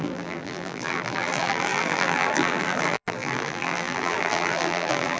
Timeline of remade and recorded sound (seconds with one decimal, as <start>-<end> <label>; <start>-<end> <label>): 0.0-5.2 remade